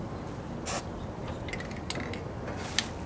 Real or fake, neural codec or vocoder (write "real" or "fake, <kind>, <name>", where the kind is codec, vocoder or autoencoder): real